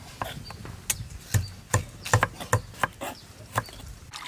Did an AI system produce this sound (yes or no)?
no